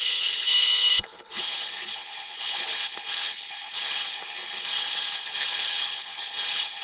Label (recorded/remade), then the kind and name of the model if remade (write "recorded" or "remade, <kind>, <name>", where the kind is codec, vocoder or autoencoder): remade, codec, HILCodec